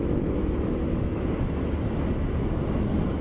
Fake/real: fake